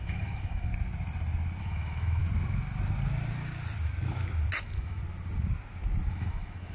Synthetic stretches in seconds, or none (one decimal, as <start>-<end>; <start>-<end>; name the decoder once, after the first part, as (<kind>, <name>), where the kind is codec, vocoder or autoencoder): 0.0-0.7 (autoencoder, DAC-VAE); 1.6-2.2; 4.6-5.0; 6.1-6.7